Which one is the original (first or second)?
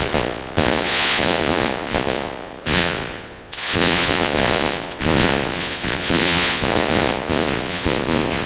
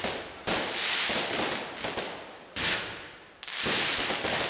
second